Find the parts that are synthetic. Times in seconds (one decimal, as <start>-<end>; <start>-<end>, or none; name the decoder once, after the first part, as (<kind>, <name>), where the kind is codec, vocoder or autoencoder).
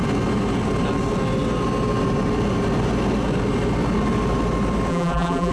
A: 4.9-5.5 (vocoder, BigVGAN v2)